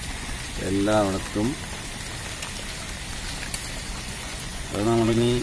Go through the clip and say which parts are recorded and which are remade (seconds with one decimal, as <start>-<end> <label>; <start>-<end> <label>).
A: 0.0-0.6 remade; 0.6-3.8 recorded; 3.8-5.4 remade